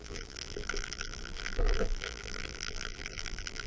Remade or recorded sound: remade